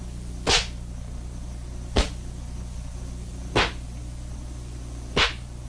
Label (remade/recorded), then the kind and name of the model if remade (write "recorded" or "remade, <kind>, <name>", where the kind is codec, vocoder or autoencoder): recorded